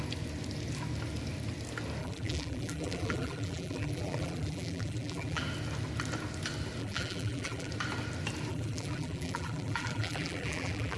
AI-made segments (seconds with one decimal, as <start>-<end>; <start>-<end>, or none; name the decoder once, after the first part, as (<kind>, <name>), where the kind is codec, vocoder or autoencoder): 2.0-5.4 (vocoder, BigVGAN v2); 6.8-7.7; 8.5-11.0